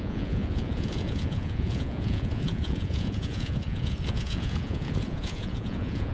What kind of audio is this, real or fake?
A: fake